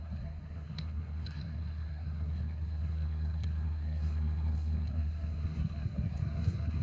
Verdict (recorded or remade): remade